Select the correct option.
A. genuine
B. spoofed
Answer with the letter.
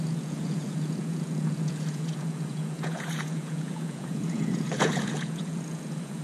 B